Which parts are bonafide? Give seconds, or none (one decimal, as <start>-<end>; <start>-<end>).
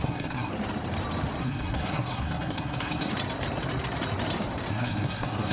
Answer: 0.5-1.4; 3.1-4.7